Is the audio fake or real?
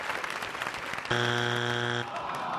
real